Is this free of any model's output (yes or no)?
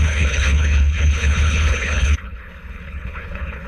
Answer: no